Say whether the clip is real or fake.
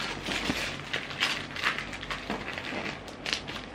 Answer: real